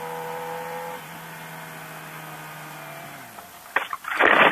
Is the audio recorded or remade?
recorded